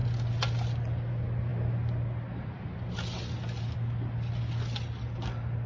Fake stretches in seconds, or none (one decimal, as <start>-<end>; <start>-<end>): none